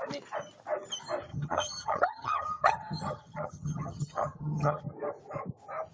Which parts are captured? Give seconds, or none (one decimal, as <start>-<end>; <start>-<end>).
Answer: 0.0-1.3; 4.8-5.9